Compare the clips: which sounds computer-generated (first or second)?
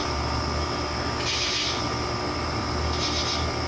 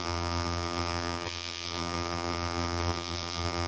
second